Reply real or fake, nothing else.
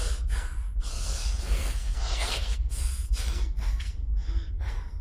fake